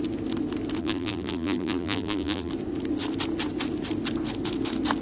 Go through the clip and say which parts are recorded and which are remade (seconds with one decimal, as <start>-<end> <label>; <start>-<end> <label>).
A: 0.0-0.8 recorded; 0.8-2.5 remade; 2.5-5.0 recorded